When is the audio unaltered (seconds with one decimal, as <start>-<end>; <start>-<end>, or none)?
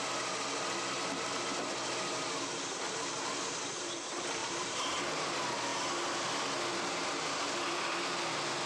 0.0-4.4; 5.3-8.7